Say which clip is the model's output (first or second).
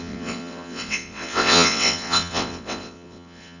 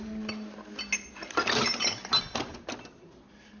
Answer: first